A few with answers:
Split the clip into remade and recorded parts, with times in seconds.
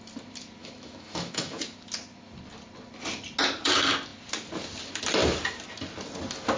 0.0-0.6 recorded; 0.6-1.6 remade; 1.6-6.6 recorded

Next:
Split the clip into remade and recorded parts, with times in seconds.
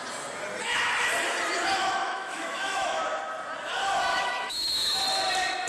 0.0-1.8 recorded; 1.8-3.0 remade; 3.0-4.1 recorded; 4.1-5.0 remade; 5.0-5.7 recorded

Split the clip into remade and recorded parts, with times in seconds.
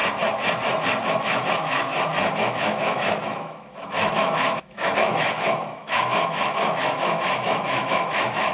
0.0-1.1 recorded; 1.1-1.9 remade; 1.9-2.4 recorded; 2.4-8.5 remade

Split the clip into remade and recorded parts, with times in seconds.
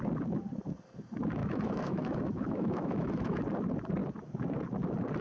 0.0-1.4 recorded; 1.4-3.4 remade; 3.4-5.2 recorded